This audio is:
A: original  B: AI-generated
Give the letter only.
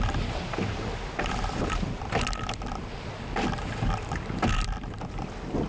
A